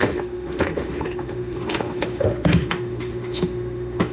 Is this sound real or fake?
fake